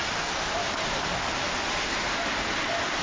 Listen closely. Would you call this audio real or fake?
real